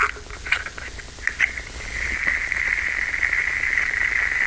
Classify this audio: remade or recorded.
recorded